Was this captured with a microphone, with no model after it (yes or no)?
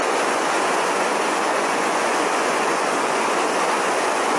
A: no